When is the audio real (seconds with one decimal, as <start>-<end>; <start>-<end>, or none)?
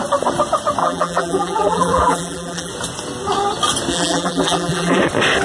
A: 0.0-0.8; 2.7-3.9; 5.0-5.4